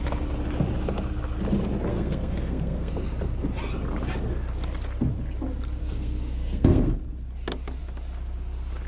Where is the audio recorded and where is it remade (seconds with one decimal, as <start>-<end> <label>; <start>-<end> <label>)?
0.0-1.9 recorded; 1.9-2.9 remade; 2.9-5.8 recorded; 5.8-6.9 remade; 6.9-8.9 recorded